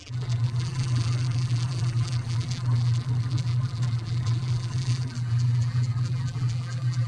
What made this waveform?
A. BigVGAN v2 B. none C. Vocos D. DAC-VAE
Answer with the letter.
A